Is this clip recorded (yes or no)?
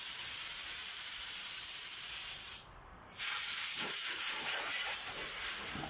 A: no